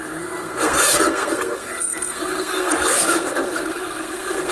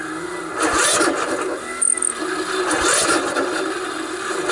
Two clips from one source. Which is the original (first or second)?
second